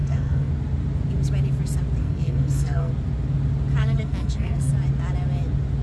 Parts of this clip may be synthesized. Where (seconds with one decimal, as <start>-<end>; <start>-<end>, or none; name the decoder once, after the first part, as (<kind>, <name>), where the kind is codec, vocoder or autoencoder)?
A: 0.0-0.5 (codec, SNAC); 2.0-2.9; 3.8-4.7